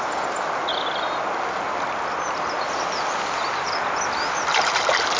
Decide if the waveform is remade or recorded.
recorded